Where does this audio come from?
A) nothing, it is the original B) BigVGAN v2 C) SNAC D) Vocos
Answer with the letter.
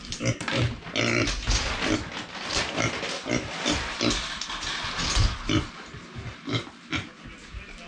A